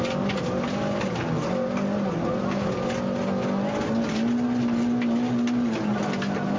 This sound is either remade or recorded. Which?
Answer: recorded